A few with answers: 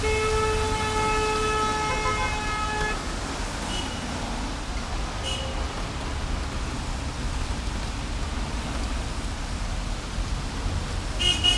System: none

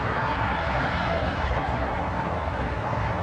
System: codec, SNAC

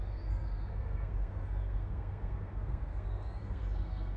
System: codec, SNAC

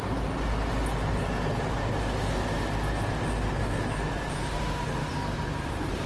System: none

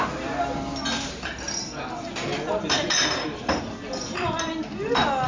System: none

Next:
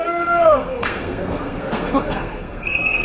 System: codec, SNAC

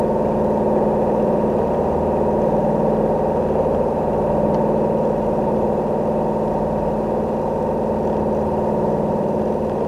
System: none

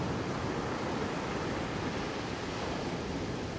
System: none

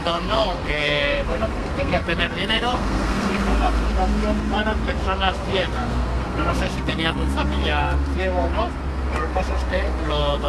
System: codec, SNAC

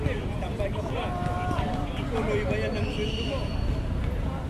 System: none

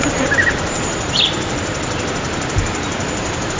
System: none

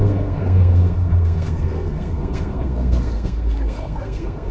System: codec, SNAC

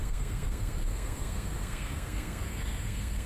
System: codec, SNAC